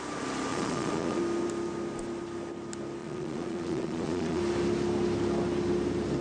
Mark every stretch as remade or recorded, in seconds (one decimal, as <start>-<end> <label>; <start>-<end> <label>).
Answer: 0.0-0.5 recorded; 0.5-1.2 remade; 1.2-3.0 recorded; 3.0-4.4 remade; 4.4-6.2 recorded